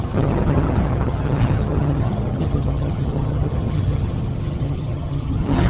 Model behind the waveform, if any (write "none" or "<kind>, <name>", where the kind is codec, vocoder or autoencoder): vocoder, HiFi-GAN